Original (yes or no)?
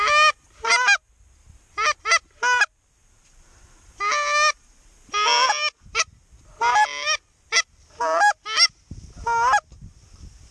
yes